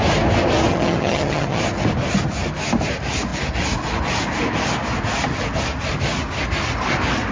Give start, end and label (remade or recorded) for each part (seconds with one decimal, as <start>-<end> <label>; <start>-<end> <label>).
0.0-0.7 recorded; 0.7-1.6 remade; 1.6-7.3 recorded